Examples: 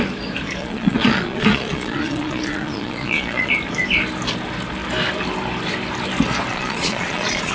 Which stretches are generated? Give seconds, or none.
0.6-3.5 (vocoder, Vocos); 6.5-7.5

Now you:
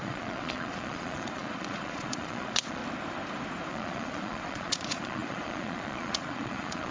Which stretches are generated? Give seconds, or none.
0.0-2.8 (vocoder, Vocos); 3.7-6.9

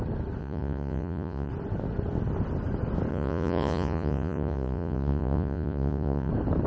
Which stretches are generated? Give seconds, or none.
0.4-1.5 (vocoder, Vocos); 3.1-6.3

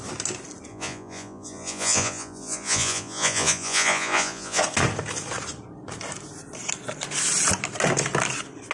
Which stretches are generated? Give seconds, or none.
0.7-4.6 (vocoder, Vocos)